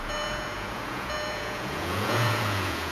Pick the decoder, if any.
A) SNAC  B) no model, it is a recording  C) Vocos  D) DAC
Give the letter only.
C